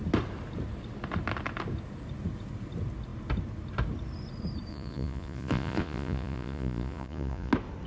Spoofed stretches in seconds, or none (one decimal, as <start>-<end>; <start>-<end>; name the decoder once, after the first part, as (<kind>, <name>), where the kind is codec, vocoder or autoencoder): 4.7-7.5 (vocoder, Vocos)